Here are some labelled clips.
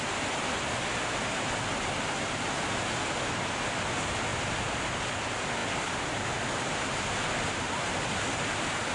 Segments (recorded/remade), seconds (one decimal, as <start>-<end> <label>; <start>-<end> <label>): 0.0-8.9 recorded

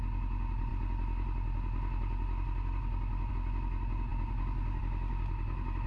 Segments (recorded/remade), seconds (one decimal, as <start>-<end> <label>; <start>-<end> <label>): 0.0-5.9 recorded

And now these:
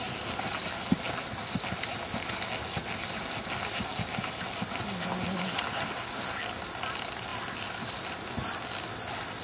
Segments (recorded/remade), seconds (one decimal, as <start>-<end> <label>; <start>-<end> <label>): 0.0-9.4 recorded